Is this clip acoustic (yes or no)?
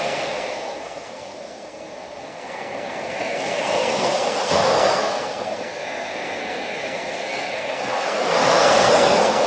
no